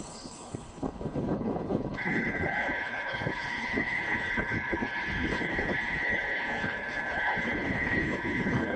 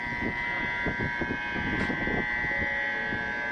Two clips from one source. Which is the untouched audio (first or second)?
second